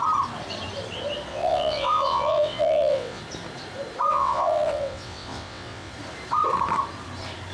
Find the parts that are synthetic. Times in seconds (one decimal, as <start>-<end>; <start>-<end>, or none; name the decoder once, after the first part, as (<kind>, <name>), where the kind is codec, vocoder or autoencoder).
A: 1.3-3.2 (vocoder, WaveNeXt); 4.1-5.9